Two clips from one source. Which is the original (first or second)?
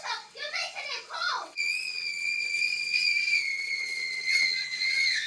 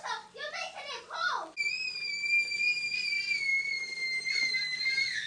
second